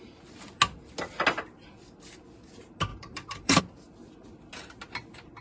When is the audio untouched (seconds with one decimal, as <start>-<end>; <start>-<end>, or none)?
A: 0.0-2.9; 3.6-5.4